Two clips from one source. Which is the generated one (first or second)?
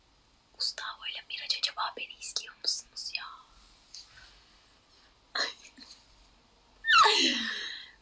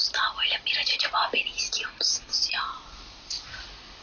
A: second